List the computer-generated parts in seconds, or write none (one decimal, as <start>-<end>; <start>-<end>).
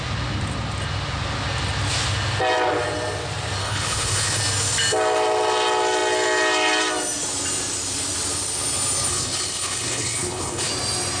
3.6-4.4; 9.1-10.7